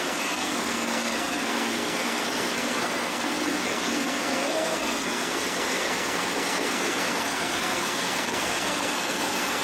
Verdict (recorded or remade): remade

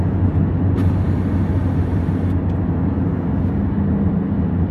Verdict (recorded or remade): recorded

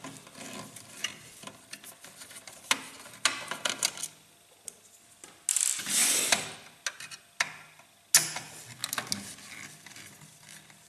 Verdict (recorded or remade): recorded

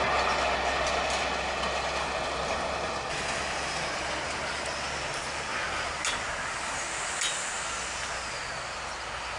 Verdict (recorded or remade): recorded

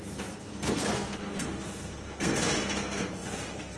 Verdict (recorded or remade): remade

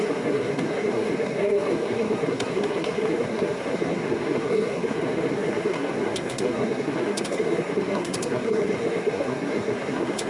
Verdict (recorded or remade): remade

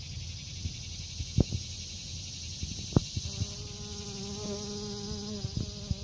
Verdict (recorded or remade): recorded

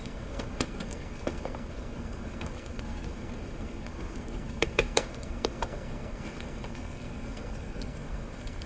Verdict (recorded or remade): remade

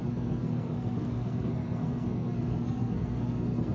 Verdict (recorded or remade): remade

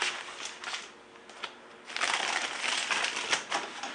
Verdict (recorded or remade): recorded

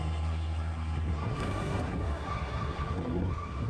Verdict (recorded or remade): remade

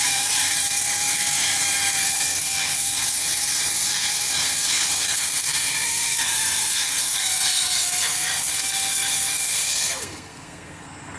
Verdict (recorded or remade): remade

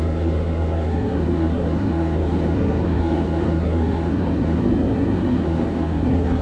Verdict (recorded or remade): remade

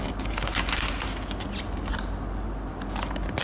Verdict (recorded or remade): recorded